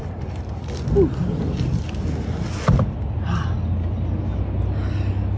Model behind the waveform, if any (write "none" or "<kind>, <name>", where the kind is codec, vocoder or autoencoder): none